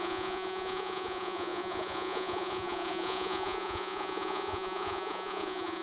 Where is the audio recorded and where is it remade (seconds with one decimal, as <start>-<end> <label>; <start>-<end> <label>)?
0.0-5.8 remade

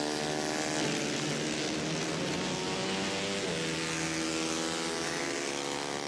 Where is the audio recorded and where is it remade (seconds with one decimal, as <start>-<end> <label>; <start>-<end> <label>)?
0.0-6.1 recorded

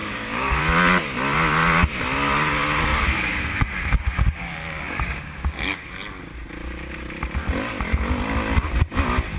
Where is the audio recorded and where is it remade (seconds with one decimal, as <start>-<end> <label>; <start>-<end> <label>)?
0.0-0.6 remade; 0.6-2.9 recorded; 2.9-5.9 remade; 5.9-9.4 recorded

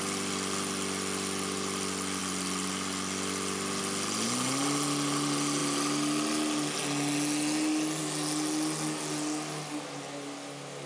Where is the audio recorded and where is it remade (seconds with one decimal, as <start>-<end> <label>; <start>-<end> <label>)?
0.0-10.9 recorded

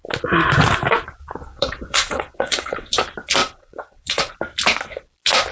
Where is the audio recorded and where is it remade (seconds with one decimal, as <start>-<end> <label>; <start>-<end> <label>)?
0.0-1.5 recorded; 1.5-2.9 remade; 2.9-3.4 recorded; 3.4-4.3 remade; 4.3-5.5 recorded

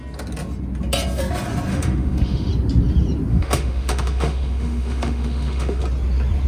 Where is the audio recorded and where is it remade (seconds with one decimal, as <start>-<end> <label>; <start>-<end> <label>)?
0.0-1.7 recorded; 1.7-2.5 remade; 2.5-3.3 recorded; 3.3-5.8 remade; 5.8-6.5 recorded

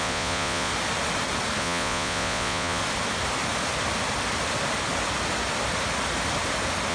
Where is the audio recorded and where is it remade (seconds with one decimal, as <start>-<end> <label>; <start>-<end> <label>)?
0.0-0.7 remade; 0.7-1.6 recorded; 1.6-2.8 remade; 2.8-6.9 recorded